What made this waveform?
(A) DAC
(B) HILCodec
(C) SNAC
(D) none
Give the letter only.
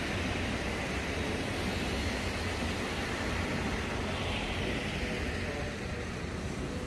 D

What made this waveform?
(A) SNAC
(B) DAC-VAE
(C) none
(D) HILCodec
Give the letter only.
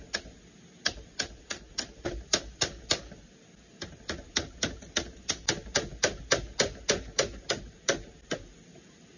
C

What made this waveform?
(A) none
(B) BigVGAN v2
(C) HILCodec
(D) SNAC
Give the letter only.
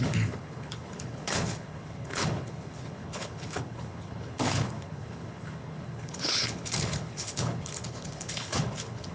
C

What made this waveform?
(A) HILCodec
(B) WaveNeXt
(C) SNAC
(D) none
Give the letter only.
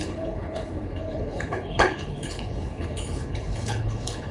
A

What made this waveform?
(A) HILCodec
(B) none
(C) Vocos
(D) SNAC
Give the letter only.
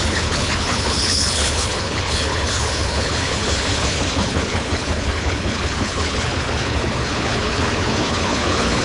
A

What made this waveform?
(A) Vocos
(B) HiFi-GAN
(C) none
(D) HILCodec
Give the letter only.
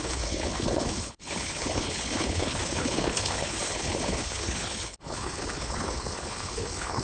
D